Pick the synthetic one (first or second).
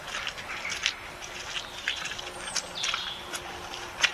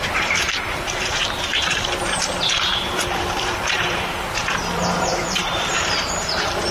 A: second